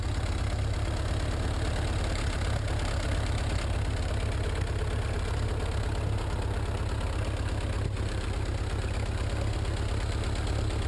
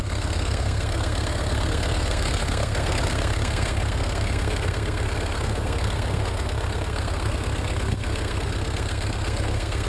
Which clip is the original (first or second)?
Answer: first